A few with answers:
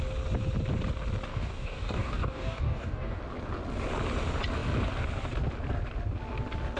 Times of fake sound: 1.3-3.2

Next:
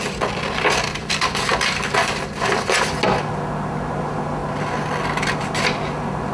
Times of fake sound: none

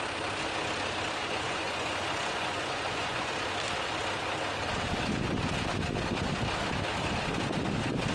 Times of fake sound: 1.2-3.3

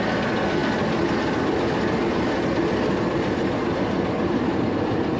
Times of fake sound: none

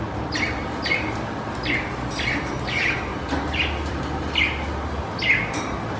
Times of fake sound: none